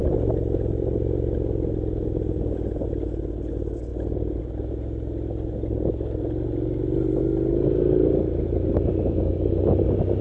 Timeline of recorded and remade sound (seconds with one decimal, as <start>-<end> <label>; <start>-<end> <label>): 0.0-10.2 recorded